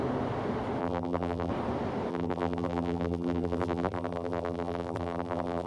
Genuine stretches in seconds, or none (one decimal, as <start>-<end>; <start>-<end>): 0.0-0.8; 1.5-2.1